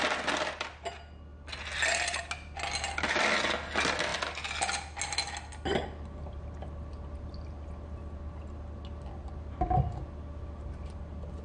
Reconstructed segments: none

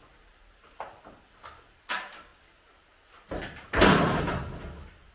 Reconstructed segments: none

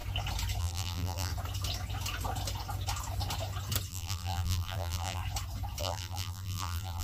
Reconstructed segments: 0.6-1.3; 3.9-5.2; 5.8-7.0

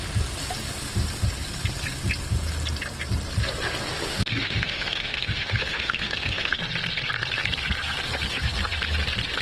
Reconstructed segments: 4.1-6.6

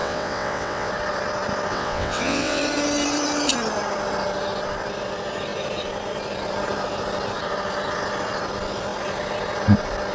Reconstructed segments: 0.0-0.9; 1.7-2.6